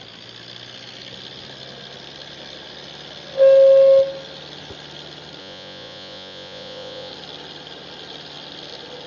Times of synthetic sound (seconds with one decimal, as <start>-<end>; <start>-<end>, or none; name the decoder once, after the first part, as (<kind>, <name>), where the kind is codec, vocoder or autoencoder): 5.4-7.1 (vocoder, Vocos)